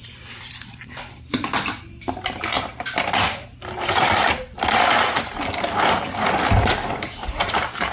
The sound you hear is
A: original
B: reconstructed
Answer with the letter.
B